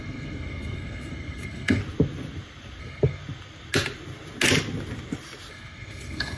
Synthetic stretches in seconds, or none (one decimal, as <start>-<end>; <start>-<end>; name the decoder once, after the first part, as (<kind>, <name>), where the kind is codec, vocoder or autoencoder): 0.0-1.8 (codec, SNAC); 2.8-3.2; 5.5-6.4